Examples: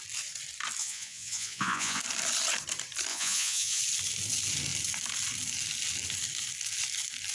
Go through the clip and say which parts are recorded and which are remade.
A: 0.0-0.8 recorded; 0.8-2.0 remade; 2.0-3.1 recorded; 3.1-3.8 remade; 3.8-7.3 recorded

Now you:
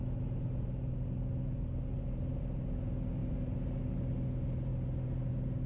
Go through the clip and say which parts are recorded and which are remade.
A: 0.0-5.7 recorded

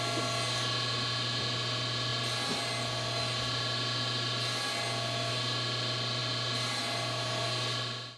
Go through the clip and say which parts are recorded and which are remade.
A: 0.0-8.2 recorded

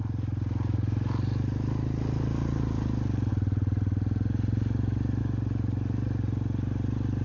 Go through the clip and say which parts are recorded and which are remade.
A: 0.0-7.2 recorded

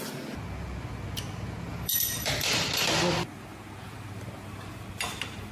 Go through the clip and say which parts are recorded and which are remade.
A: 0.0-1.7 recorded; 1.7-2.7 remade; 2.7-5.5 recorded